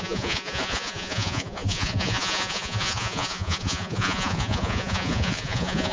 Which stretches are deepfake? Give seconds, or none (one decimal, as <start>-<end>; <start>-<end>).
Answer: 0.0-5.9